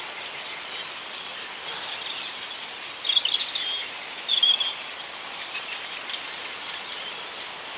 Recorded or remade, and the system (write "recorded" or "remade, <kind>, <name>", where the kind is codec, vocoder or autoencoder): recorded